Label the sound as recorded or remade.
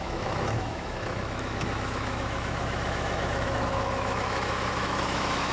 remade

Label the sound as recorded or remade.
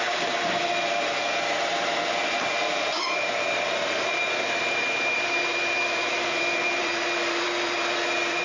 remade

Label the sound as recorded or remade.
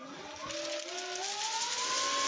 recorded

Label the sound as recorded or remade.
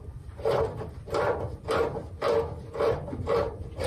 recorded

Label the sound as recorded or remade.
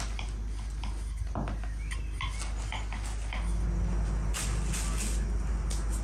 recorded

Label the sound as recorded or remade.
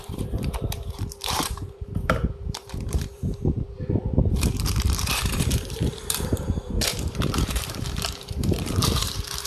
remade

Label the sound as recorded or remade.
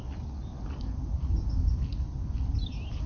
recorded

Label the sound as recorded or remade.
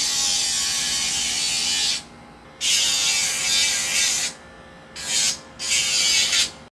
recorded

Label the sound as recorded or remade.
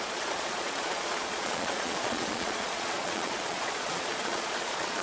remade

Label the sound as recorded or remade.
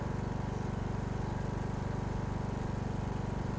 recorded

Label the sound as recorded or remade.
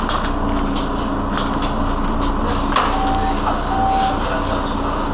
recorded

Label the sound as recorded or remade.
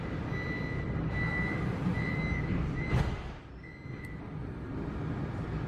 recorded